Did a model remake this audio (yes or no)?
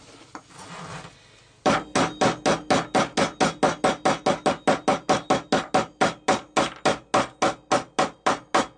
no